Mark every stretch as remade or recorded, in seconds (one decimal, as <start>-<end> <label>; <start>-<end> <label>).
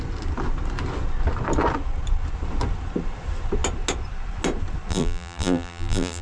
0.0-4.9 recorded; 4.9-6.2 remade